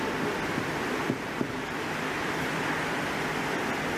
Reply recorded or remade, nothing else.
recorded